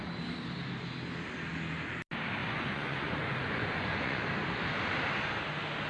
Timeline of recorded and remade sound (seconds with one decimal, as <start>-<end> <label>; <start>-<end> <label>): 0.0-2.4 recorded; 2.4-4.2 remade; 4.2-5.9 recorded